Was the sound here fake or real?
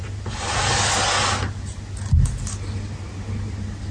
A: real